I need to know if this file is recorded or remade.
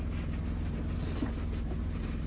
recorded